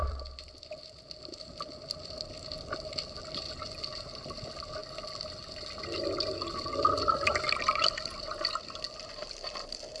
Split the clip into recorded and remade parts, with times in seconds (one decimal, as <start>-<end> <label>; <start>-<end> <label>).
0.0-4.8 remade; 4.8-6.5 recorded; 6.5-10.0 remade